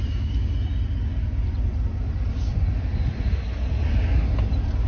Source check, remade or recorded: recorded